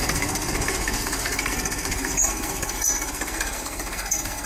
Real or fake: fake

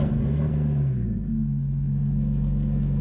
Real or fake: fake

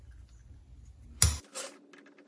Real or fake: real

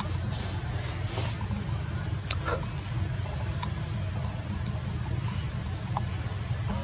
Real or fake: real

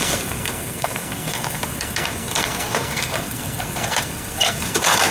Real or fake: fake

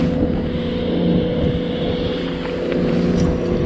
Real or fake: real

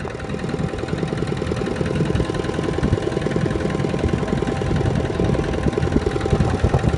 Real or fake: real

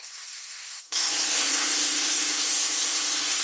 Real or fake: fake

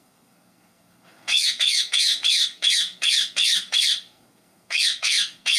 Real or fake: fake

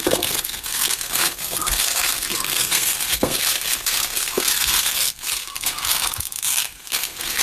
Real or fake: fake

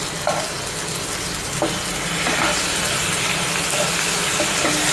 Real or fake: real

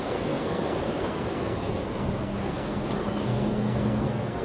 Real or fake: fake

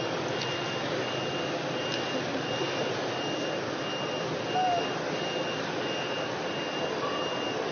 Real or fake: real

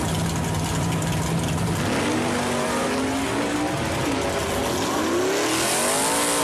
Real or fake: real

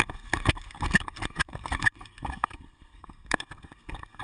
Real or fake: fake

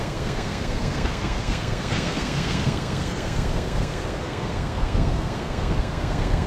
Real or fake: fake